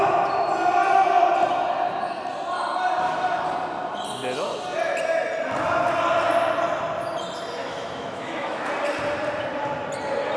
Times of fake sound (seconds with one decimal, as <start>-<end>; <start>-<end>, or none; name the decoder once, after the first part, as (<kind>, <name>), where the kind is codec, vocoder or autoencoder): 7.6-8.7 (autoencoder, DAC-VAE)